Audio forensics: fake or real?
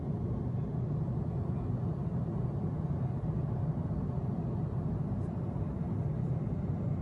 fake